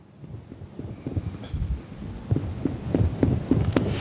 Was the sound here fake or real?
real